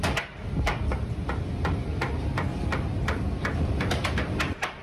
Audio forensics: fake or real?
real